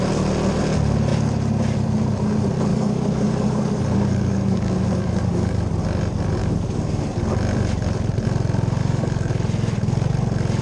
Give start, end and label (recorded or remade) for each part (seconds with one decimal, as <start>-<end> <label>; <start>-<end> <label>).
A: 0.0-2.7 recorded; 2.7-5.6 remade; 5.6-6.4 recorded; 6.4-7.0 remade; 7.0-8.8 recorded; 8.8-9.3 remade; 9.3-10.6 recorded